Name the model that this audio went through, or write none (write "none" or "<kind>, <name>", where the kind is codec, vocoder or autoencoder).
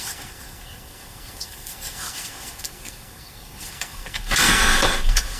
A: codec, SNAC